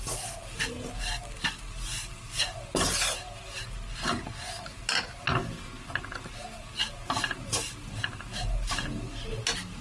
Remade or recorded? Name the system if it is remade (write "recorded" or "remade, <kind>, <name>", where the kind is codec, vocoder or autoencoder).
recorded